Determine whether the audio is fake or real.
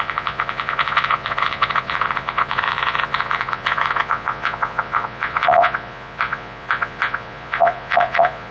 fake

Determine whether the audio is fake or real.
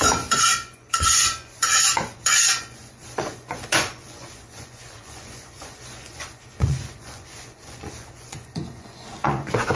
fake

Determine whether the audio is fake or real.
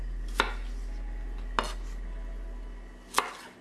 real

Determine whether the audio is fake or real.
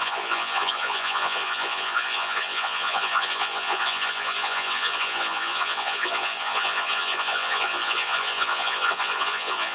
fake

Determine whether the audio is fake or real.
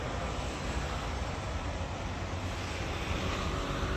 real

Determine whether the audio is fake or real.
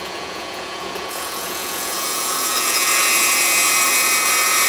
fake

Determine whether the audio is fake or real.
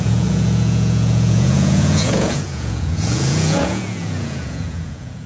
fake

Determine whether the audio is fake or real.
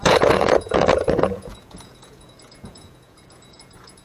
fake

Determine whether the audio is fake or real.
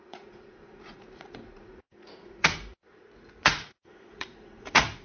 fake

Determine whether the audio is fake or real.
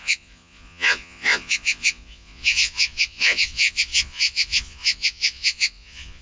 fake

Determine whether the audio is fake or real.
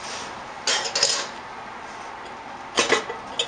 real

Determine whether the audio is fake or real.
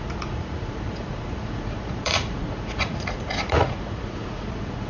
fake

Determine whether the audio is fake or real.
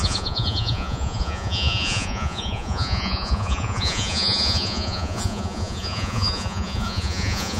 fake